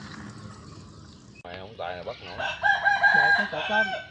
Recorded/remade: recorded